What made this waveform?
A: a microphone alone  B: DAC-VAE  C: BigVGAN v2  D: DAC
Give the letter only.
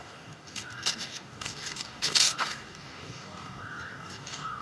D